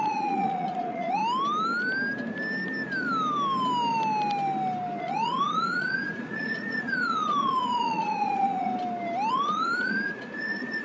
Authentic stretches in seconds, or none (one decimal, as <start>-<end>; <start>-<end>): 1.2-5.0; 8.7-9.3